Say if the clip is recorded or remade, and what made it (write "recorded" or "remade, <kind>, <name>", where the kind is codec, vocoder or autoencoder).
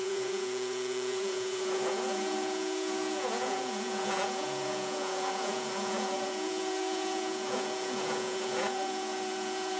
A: remade, vocoder, Vocos